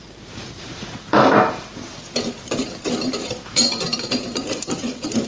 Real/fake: fake